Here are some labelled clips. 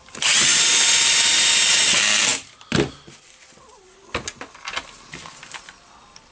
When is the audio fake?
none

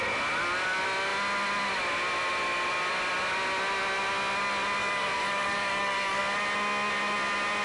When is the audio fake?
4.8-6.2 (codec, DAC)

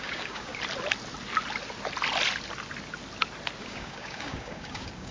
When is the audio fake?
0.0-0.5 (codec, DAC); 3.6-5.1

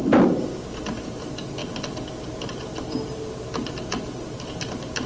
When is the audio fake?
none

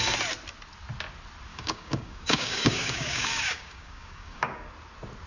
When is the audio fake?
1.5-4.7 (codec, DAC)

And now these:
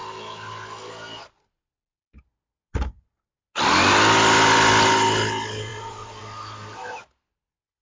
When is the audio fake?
none

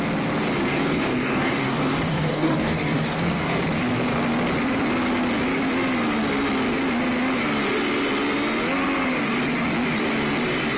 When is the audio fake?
0.7-3.6 (codec, DAC)

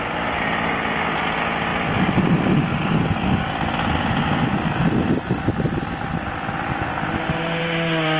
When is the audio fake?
none